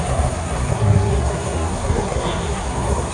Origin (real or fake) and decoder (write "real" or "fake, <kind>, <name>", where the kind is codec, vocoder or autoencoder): fake, codec, SNAC